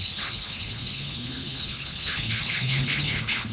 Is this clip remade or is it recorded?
remade